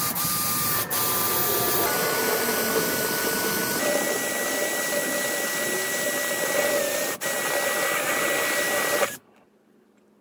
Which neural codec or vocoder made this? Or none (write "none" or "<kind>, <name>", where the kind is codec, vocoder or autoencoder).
none